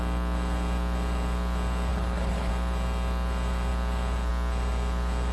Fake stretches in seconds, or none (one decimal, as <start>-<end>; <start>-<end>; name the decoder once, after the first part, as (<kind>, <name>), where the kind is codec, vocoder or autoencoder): 1.9-2.5 (codec, HILCodec)